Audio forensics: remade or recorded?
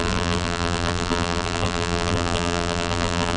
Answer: remade